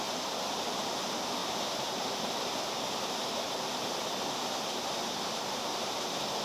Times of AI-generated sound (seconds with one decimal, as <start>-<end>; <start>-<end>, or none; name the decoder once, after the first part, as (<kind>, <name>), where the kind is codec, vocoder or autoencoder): 1.4-5.2 (vocoder, BigVGAN v2)